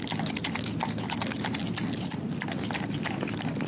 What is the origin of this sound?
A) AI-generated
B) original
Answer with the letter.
B